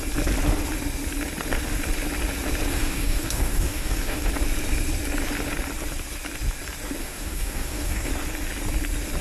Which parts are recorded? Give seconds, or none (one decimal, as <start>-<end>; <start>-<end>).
0.0-2.7; 4.3-7.0; 8.1-9.2